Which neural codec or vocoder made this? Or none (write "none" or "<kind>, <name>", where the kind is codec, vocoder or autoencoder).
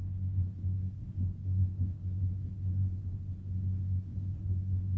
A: codec, SNAC